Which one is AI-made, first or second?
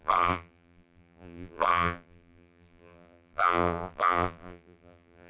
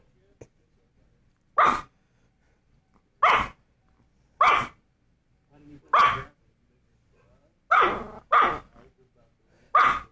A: first